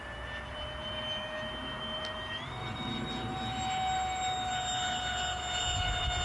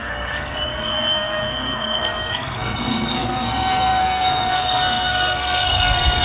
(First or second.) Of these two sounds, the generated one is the second